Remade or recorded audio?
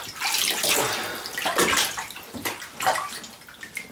recorded